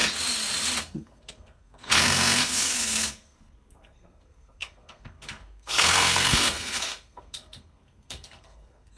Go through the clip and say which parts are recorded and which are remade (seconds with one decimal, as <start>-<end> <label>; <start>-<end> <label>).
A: 0.0-0.8 recorded; 0.8-9.0 remade